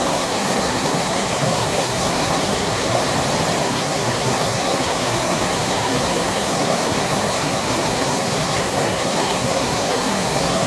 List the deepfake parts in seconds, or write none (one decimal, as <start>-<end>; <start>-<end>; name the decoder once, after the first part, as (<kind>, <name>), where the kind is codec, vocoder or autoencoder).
0.0-3.0 (codec, SNAC); 3.6-10.7